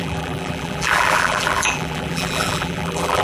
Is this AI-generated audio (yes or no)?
yes